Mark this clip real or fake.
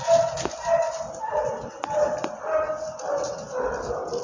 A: real